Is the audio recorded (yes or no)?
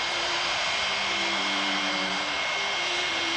yes